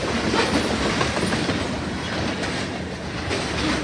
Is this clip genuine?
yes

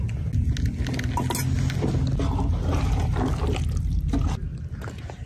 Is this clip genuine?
yes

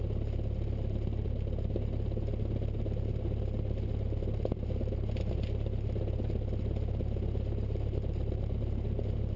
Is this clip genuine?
yes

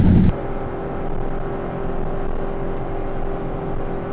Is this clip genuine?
yes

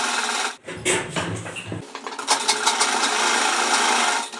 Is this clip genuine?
yes